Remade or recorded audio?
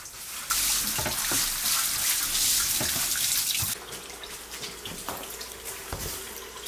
recorded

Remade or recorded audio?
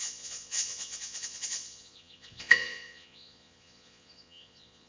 remade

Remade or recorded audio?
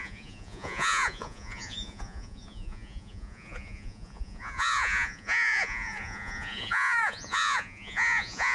remade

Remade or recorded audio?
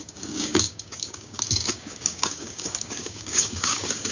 remade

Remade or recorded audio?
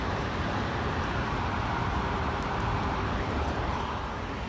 remade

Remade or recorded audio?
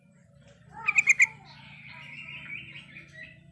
recorded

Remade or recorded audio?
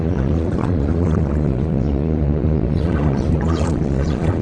remade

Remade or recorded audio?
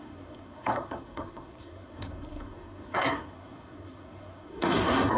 remade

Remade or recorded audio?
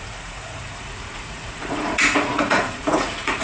remade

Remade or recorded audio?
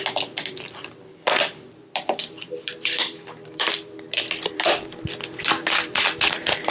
remade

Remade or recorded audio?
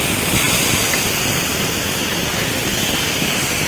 recorded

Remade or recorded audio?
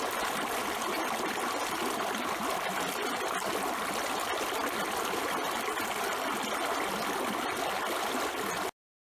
recorded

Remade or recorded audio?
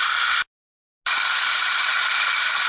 recorded